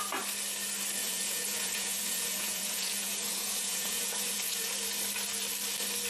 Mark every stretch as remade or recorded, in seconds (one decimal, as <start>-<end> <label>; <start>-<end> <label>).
0.0-1.0 recorded; 1.0-4.7 remade; 4.7-6.1 recorded